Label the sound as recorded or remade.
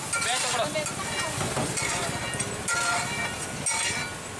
recorded